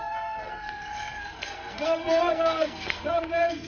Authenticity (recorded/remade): remade